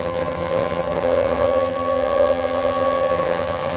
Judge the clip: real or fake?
fake